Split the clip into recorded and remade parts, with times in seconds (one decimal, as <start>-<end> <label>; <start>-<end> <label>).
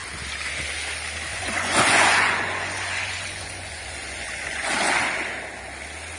0.0-1.3 recorded; 1.3-5.0 remade; 5.0-6.2 recorded